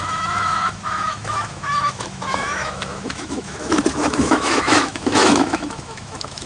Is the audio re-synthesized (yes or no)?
yes